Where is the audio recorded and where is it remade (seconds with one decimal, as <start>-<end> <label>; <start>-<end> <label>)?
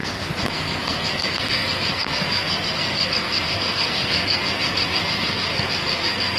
0.0-6.4 remade